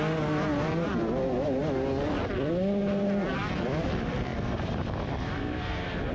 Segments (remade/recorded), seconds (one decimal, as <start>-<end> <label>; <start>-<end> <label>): 0.0-6.1 recorded